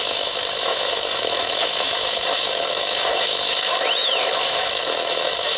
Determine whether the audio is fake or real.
fake